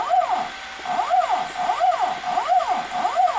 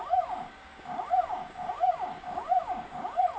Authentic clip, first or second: first